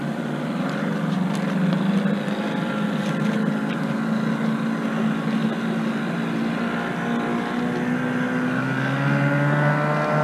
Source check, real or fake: real